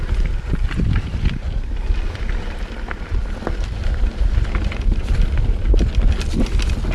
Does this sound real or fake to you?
real